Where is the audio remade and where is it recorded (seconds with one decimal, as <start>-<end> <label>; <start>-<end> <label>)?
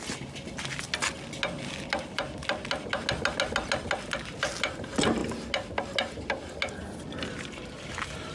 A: 0.0-8.3 recorded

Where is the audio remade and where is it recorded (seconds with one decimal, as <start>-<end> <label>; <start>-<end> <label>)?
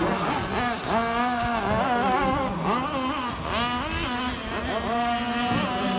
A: 0.0-6.0 recorded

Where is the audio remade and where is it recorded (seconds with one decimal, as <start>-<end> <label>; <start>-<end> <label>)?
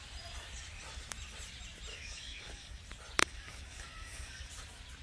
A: 0.0-1.9 recorded; 1.9-2.8 remade; 2.8-3.2 recorded; 3.2-4.5 remade; 4.5-5.0 recorded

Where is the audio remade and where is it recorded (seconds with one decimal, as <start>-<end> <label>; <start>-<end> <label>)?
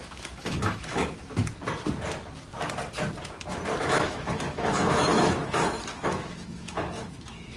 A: 0.0-1.6 remade; 1.6-3.8 recorded; 3.8-7.6 remade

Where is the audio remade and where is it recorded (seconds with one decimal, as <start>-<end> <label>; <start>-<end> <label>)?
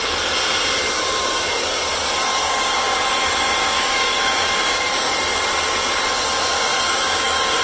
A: 0.0-2.4 recorded; 2.4-3.0 remade; 3.0-3.6 recorded; 3.6-5.1 remade; 5.1-6.7 recorded; 6.7-7.6 remade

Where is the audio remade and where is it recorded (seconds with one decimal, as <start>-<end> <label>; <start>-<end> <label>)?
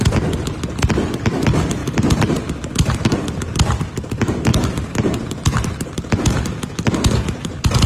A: 0.0-1.8 recorded; 1.8-2.4 remade; 2.4-4.5 recorded; 4.5-5.7 remade; 5.7-7.9 recorded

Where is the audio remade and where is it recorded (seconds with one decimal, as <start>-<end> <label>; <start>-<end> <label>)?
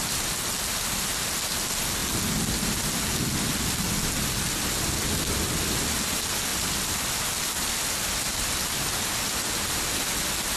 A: 0.0-10.6 recorded